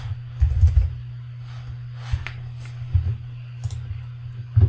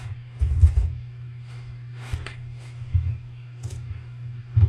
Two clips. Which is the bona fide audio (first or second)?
first